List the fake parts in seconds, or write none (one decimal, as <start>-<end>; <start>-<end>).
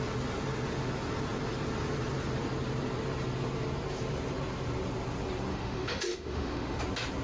5.5-6.8